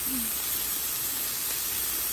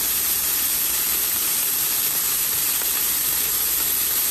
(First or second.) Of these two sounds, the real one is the first